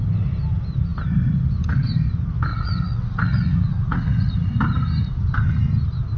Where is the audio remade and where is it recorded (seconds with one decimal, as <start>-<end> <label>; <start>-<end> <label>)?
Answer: 0.0-2.5 recorded; 2.5-4.5 remade; 4.5-6.2 recorded